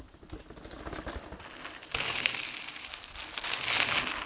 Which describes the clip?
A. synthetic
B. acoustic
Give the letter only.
B